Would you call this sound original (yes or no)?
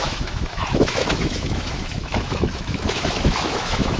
no